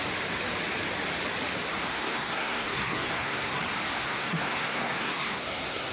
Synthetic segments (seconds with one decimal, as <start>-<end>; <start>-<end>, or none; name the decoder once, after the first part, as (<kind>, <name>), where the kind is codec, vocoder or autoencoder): 1.9-3.6 (codec, SNAC); 4.0-5.9